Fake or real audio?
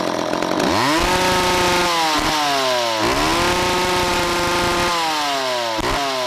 real